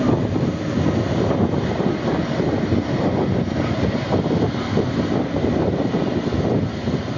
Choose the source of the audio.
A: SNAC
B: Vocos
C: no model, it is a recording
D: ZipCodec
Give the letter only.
C